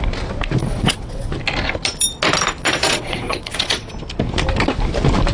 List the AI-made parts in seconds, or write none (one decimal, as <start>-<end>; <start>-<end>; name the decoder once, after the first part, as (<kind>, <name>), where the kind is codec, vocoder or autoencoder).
0.6-1.3 (vocoder, WaveNeXt); 2.6-3.9